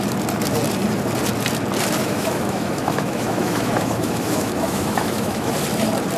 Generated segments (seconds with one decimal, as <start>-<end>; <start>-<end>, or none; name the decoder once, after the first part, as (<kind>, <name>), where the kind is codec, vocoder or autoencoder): 2.0-5.5 (autoencoder, DAC-VAE)